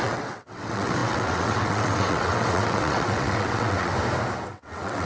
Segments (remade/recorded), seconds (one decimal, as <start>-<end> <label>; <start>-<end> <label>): 0.0-3.9 remade; 3.9-4.5 recorded; 4.5-5.1 remade